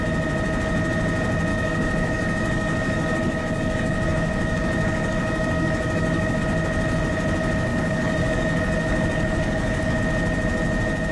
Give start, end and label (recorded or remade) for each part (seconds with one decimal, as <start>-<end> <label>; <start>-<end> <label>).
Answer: 0.0-1.5 recorded; 1.5-6.4 remade; 6.4-7.7 recorded; 7.7-10.0 remade; 10.0-11.1 recorded